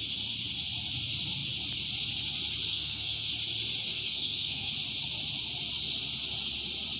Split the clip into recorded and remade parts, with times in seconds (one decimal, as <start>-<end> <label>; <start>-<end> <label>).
0.0-2.7 recorded; 2.7-3.3 remade; 3.3-3.9 recorded; 3.9-4.7 remade; 4.7-7.0 recorded